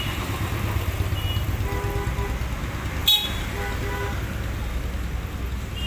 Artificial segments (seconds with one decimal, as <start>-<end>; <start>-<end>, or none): none